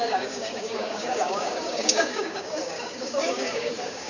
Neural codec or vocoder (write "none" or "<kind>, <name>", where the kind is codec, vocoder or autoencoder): codec, DAC